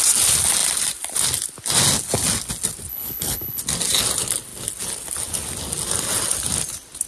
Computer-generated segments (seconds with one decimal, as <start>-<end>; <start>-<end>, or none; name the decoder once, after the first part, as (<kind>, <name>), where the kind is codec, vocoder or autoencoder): 2.9-3.6 (codec, HILCodec)